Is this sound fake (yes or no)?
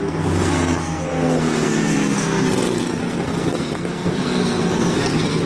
yes